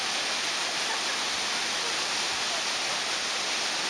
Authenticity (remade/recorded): recorded